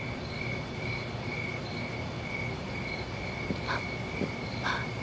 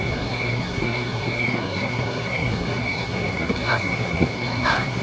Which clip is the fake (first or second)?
second